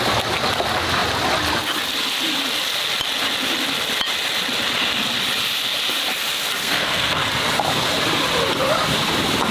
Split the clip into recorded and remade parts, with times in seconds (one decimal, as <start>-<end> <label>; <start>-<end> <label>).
0.0-6.6 recorded; 6.6-7.3 remade; 7.3-9.5 recorded